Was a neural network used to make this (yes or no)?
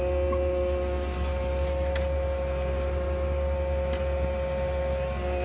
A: no